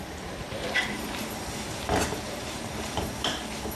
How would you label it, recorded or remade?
remade